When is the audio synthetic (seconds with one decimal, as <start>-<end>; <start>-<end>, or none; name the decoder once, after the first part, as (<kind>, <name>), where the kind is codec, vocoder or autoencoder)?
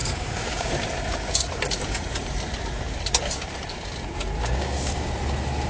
0.0-0.7 (codec, DAC); 4.4-5.1